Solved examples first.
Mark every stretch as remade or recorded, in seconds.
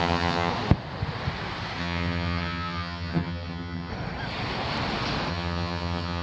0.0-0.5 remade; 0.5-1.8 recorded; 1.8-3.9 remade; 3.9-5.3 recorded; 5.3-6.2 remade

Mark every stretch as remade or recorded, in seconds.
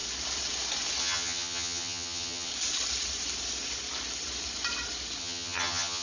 0.0-1.0 recorded; 1.0-2.5 remade; 2.5-5.2 recorded; 5.2-6.0 remade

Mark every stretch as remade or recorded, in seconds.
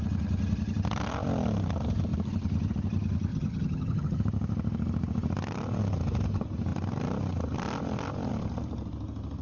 0.0-3.3 recorded; 3.3-4.2 remade; 4.2-9.4 recorded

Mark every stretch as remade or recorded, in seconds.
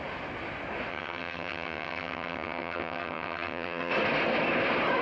0.0-0.9 recorded; 0.9-3.9 remade; 3.9-5.0 recorded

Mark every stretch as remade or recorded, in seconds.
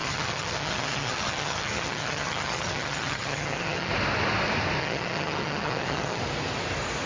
0.0-3.9 remade; 3.9-4.8 recorded; 4.8-6.2 remade; 6.2-7.1 recorded